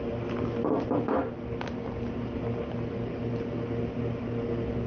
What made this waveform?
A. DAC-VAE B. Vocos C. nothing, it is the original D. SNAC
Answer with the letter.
C